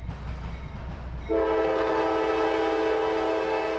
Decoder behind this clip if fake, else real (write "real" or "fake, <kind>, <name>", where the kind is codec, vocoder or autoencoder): real